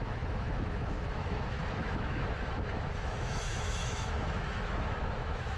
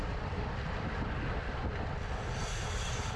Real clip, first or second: second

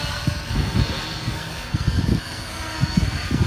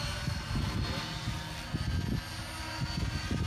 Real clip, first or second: second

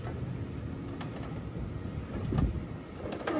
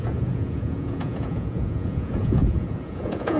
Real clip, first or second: first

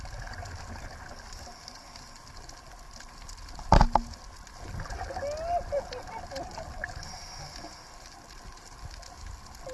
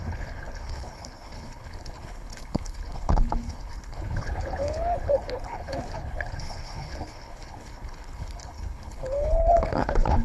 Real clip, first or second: first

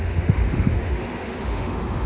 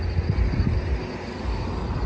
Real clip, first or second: second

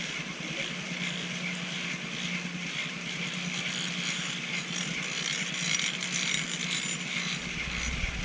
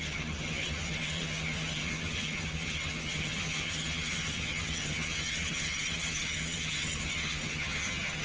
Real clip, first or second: first